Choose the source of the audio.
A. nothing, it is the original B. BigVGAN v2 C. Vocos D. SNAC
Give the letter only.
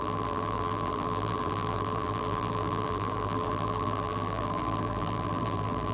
B